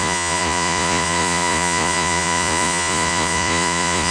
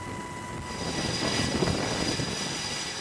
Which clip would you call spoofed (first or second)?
first